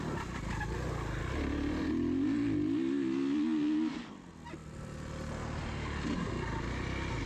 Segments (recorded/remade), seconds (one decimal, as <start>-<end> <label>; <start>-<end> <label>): 0.0-7.3 recorded